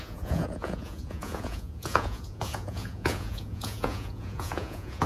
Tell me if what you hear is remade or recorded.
remade